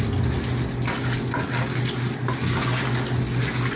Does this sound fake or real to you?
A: real